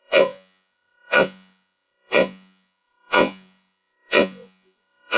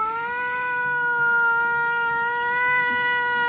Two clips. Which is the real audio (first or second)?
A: second